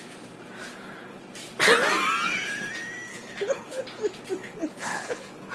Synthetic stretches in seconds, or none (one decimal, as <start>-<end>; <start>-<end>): 0.7-1.2; 3.1-3.8; 4.4-5.5